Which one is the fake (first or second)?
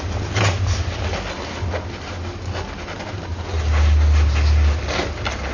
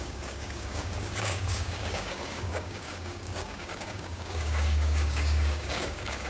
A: second